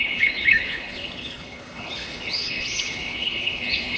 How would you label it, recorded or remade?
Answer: remade